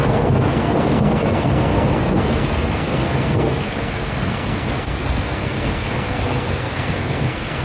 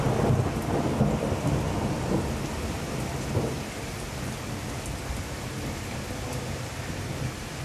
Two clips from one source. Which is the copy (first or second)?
first